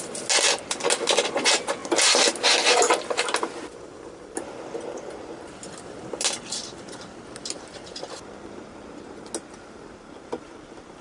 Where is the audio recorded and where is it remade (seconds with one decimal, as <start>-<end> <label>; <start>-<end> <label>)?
0.0-11.0 recorded